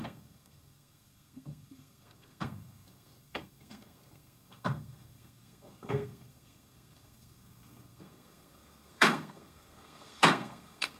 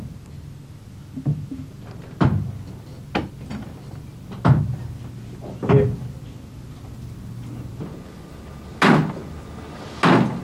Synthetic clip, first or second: first